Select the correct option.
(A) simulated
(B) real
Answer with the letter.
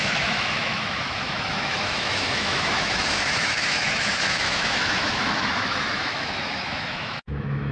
A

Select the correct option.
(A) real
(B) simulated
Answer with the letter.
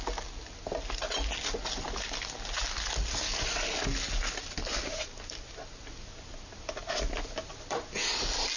A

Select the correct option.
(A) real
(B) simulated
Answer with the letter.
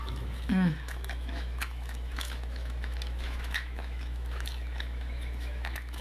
B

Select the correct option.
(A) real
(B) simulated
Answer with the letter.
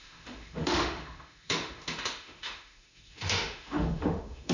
B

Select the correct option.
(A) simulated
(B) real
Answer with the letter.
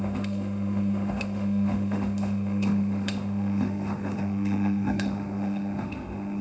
A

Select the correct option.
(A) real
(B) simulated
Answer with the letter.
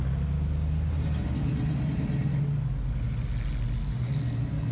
A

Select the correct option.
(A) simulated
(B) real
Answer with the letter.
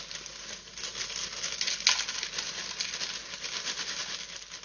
B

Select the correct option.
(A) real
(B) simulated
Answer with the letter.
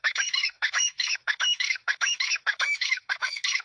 B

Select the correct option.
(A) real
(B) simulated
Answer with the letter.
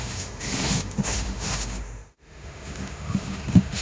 B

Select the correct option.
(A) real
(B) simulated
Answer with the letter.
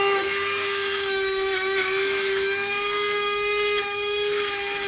B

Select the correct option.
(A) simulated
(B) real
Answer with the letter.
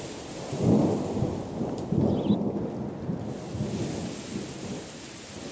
B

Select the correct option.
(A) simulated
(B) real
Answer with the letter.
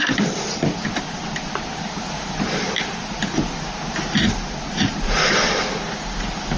B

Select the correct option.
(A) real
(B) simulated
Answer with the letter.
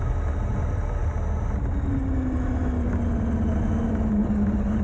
A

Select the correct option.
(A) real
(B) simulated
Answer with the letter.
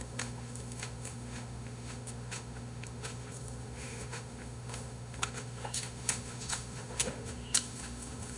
B